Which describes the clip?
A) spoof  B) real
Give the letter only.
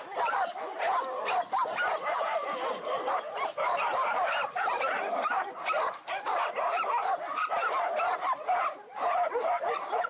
B